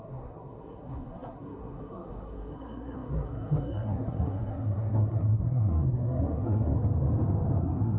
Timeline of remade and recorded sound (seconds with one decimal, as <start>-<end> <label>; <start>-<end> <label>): 0.0-6.8 remade; 6.8-7.6 recorded; 7.6-8.0 remade